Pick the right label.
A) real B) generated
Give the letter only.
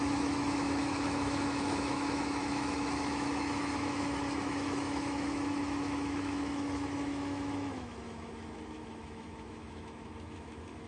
B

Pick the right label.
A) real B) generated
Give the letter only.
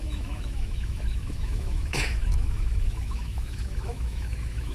B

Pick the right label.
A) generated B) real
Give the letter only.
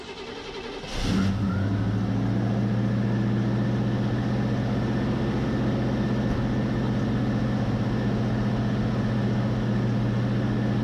B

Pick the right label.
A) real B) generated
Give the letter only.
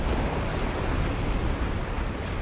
A